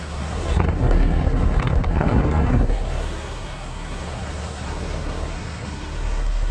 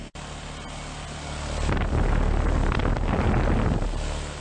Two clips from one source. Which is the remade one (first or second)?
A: first